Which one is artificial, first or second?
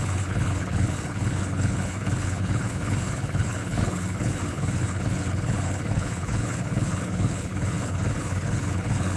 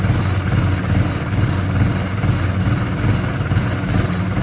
first